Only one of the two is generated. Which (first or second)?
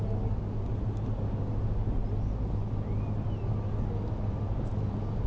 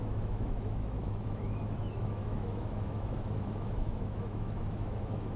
second